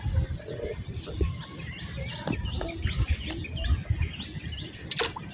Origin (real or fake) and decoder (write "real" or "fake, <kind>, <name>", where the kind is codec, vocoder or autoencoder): real